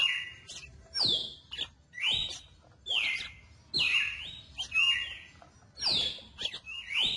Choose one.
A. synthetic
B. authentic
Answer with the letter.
B